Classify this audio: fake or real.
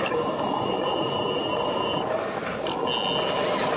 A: real